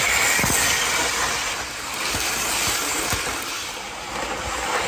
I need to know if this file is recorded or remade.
recorded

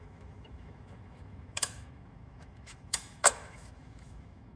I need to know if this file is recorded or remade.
remade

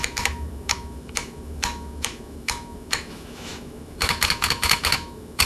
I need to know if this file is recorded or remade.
remade